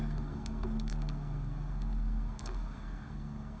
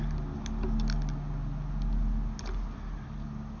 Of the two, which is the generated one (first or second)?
first